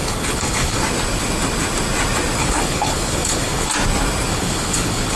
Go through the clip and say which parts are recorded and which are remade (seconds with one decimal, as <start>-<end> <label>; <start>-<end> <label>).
0.0-0.8 remade; 0.8-2.4 recorded; 2.4-3.7 remade; 3.7-4.3 recorded; 4.3-5.2 remade